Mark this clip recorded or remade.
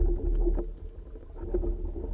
recorded